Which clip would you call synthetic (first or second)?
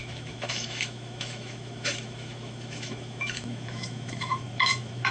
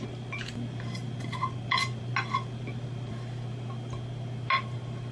first